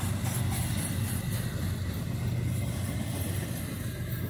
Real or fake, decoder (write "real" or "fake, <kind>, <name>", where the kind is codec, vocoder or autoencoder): real